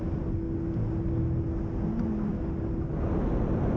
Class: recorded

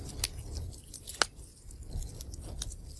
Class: recorded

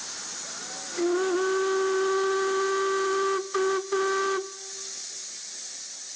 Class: recorded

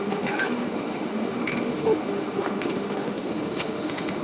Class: remade